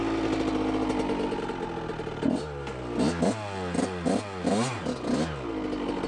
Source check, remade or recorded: recorded